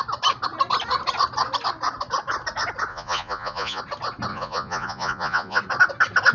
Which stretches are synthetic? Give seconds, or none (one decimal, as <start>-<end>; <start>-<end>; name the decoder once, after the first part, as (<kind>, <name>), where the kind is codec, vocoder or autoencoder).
2.9-3.8 (vocoder, Vocos); 4.3-5.6